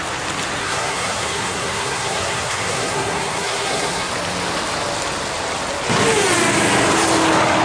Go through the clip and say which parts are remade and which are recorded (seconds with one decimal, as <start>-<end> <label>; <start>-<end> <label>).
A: 0.0-0.6 recorded; 0.6-4.1 remade; 4.1-7.6 recorded